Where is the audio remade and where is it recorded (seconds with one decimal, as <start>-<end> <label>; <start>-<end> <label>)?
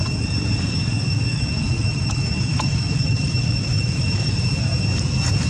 0.0-1.3 recorded; 1.3-4.3 remade; 4.3-5.5 recorded